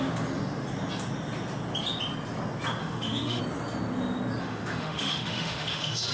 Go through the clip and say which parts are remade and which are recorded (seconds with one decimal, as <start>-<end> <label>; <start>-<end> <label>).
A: 0.0-2.8 recorded; 2.8-3.4 remade; 3.4-4.4 recorded; 4.4-6.1 remade